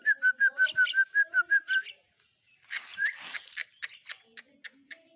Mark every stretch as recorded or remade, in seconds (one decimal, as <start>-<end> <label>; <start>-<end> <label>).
0.0-2.9 recorded; 2.9-3.8 remade; 3.8-5.2 recorded